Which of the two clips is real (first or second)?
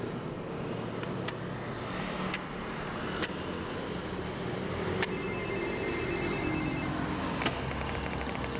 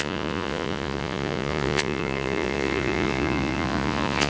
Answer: first